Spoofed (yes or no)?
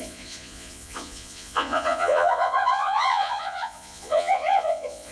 yes